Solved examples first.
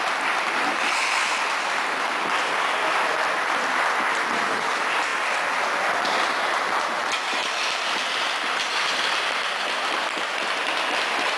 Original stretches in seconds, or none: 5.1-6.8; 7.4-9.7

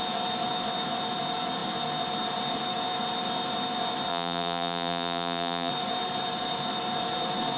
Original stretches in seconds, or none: 0.0-4.1; 5.7-7.6

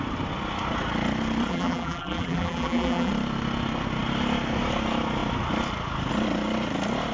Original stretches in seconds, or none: 0.0-1.5; 3.1-7.1

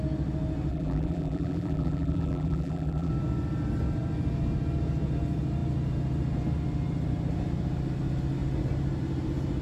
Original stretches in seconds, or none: 0.0-0.7; 3.1-9.6

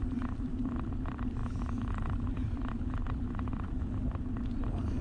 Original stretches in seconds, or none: none

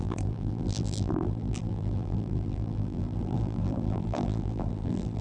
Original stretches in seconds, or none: none

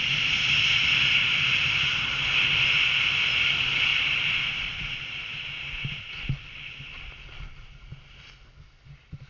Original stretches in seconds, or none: 0.0-3.9; 6.3-9.3